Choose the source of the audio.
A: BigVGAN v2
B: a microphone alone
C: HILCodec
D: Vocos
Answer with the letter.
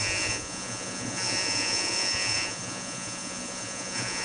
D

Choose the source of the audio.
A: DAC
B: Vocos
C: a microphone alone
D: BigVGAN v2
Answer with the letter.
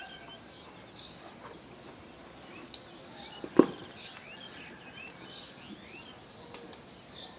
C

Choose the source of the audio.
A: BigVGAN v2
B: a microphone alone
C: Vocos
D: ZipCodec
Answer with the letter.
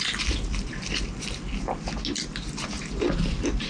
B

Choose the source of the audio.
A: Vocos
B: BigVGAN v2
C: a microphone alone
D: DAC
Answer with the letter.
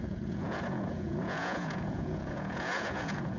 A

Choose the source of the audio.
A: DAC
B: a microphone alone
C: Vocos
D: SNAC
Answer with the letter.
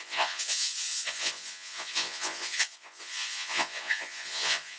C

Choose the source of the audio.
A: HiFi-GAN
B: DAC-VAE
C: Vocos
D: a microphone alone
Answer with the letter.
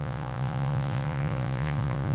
C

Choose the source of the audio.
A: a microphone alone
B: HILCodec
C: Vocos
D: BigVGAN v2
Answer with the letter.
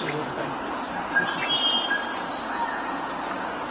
A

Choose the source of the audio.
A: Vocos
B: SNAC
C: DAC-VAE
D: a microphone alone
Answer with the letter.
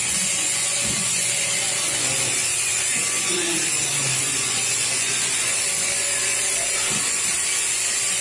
A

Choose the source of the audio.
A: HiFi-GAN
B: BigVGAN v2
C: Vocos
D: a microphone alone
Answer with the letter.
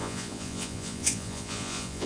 C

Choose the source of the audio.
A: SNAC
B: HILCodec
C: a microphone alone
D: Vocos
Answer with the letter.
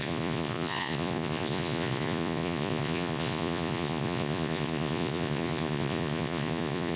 D